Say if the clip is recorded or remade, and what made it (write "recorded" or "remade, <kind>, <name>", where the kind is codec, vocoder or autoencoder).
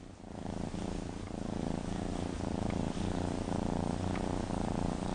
recorded